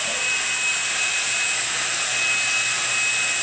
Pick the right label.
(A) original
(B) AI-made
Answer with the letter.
A